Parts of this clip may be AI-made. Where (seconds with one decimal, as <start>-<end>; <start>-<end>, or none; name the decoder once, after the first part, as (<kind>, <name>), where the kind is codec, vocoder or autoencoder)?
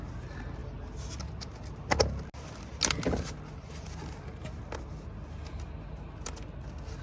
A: none